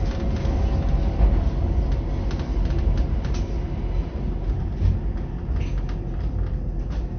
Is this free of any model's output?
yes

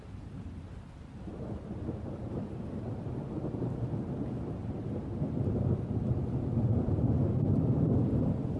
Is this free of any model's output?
yes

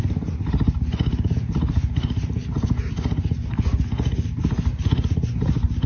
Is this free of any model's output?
yes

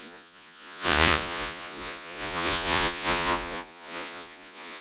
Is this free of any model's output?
no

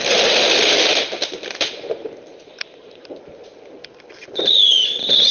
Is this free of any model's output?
yes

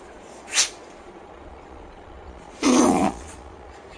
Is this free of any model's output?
no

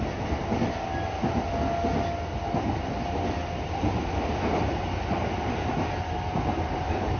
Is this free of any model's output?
yes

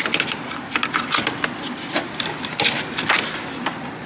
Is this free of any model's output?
yes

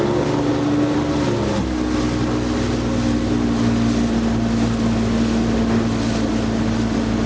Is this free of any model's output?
yes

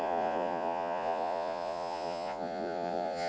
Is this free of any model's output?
no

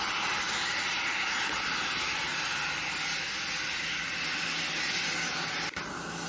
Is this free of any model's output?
yes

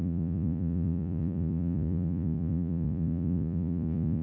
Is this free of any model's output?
no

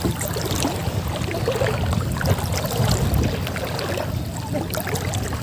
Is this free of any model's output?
yes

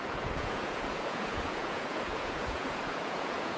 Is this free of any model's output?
no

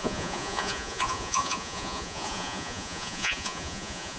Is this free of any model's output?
no